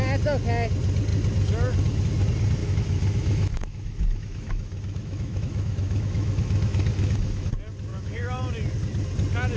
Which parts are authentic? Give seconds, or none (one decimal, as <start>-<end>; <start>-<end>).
0.0-2.6; 7.5-7.9; 8.4-9.6